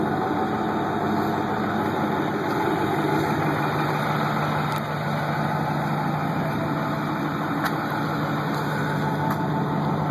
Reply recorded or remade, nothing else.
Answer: recorded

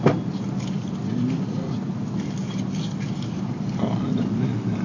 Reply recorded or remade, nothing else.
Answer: recorded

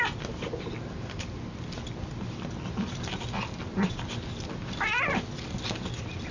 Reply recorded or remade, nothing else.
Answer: recorded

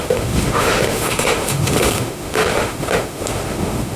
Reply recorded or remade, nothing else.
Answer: remade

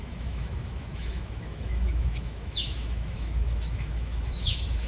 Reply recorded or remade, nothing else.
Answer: remade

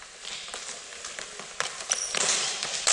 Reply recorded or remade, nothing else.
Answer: recorded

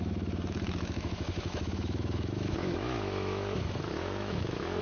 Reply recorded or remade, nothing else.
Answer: remade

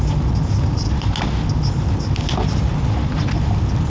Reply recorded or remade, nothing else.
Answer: recorded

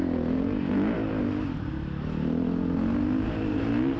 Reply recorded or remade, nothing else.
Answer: recorded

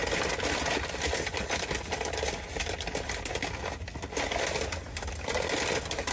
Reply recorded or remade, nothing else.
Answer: recorded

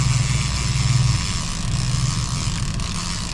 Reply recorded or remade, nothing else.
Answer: recorded